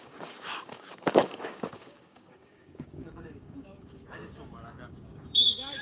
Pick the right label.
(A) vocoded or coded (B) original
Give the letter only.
A